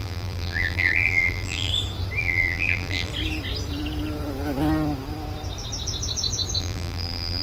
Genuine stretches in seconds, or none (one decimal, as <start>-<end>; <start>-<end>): 1.7-2.2; 3.1-6.6